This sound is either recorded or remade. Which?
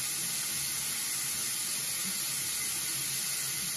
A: recorded